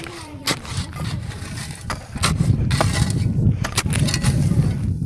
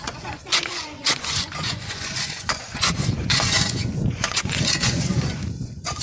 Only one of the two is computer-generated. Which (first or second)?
second